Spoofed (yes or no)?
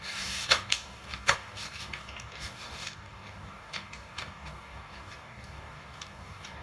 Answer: yes